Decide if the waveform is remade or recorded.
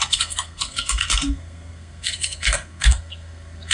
remade